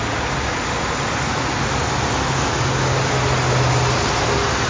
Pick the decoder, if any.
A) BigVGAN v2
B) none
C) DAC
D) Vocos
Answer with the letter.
B